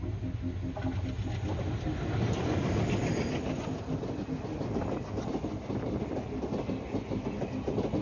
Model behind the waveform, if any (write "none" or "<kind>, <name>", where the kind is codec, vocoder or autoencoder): none